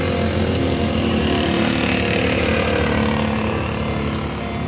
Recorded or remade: recorded